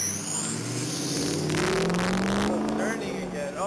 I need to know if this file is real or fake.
real